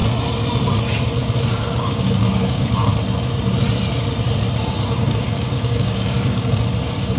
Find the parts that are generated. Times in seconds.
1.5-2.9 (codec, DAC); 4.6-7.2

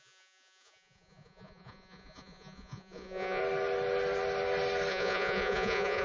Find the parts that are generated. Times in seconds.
0.0-3.4 (vocoder, Vocos); 4.9-6.0

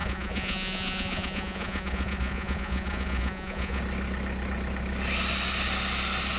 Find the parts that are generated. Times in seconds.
0.0-3.8 (vocoder, Vocos)

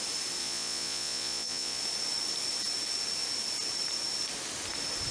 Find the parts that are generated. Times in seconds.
0.4-1.8 (vocoder, Vocos)

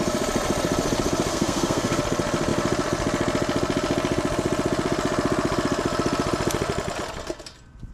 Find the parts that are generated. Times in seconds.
1.3-2.0 (codec, SNAC)

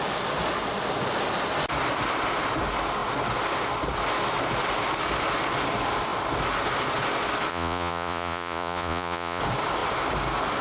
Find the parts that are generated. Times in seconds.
7.5-9.4 (vocoder, Vocos)

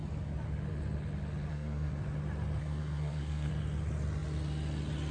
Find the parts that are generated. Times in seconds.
1.5-2.0 (codec, SNAC); 2.6-3.5

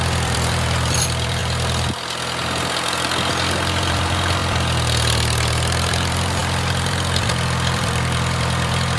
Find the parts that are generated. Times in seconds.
0.0-1.4 (vocoder, BigVGAN v2); 3.3-4.4; 5.9-9.0